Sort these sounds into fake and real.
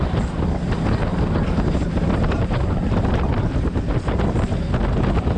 real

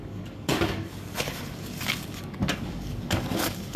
fake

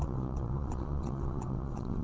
fake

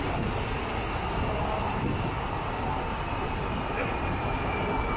real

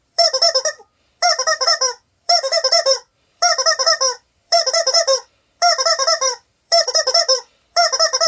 fake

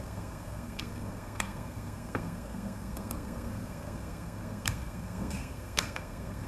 fake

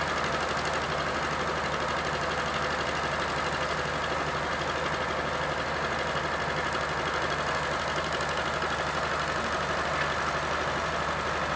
real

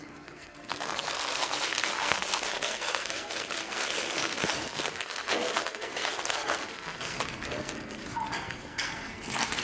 fake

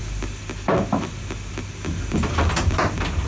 real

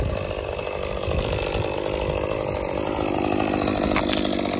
real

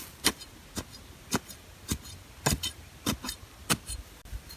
real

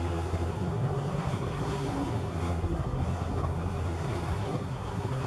fake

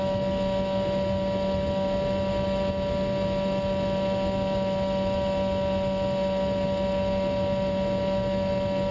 real